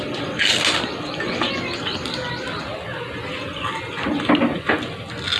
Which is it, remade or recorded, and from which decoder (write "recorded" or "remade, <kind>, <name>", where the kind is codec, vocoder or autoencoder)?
recorded